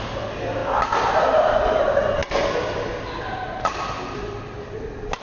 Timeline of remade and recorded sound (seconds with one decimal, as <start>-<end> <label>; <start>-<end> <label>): 0.0-5.2 recorded